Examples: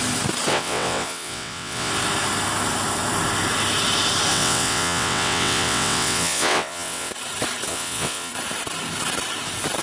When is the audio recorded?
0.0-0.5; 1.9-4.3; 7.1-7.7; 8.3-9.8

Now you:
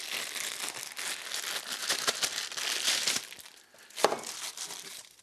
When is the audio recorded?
0.0-5.2

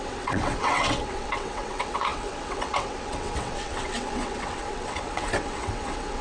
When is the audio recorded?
none

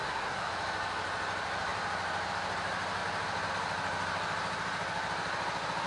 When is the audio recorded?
0.5-5.9

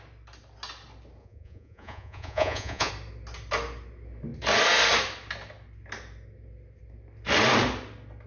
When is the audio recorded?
0.0-1.2; 2.9-8.3

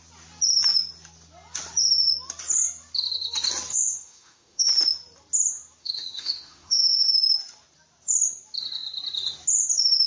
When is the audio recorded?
0.0-3.7; 4.7-5.8; 7.1-10.1

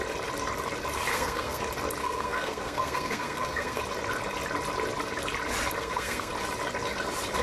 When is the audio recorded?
0.0-1.1; 1.6-2.0; 3.8-5.8; 6.3-7.4

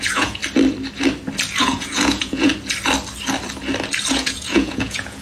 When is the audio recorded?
0.4-1.6; 2.5-4.1